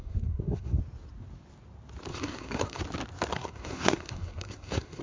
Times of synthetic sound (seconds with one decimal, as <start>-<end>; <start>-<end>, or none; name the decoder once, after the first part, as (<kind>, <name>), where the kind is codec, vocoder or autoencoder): 0.0-0.8 (codec, SNAC); 2.1-2.8; 3.3-5.0